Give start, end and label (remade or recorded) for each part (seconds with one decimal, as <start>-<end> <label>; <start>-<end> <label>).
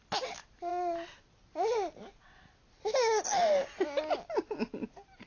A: 0.0-5.3 recorded